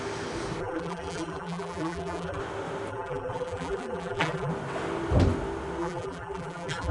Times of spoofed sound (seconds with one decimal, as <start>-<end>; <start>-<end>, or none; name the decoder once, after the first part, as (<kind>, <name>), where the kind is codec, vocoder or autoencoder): 0.6-2.4 (vocoder, BigVGAN v2); 2.9-4.5; 5.8-6.9